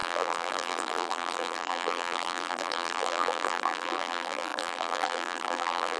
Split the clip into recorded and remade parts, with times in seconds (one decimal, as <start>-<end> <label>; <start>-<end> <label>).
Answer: 0.0-6.0 remade